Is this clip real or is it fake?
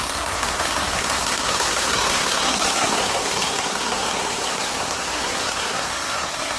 fake